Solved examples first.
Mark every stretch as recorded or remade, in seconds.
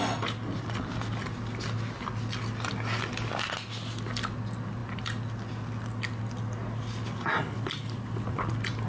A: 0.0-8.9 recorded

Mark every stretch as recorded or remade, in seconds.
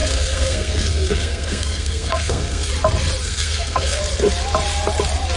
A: 0.0-2.7 remade; 2.7-3.2 recorded; 3.2-4.0 remade; 4.0-5.4 recorded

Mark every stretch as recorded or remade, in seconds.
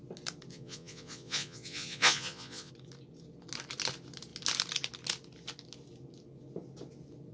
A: 0.0-0.5 recorded; 0.5-2.7 remade; 2.7-7.3 recorded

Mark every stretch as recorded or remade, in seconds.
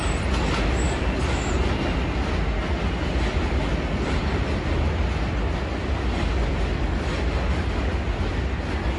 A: 0.0-9.0 recorded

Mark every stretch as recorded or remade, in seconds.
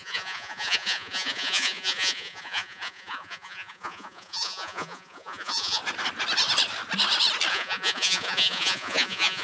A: 0.0-5.8 remade; 5.8-7.5 recorded; 7.5-9.4 remade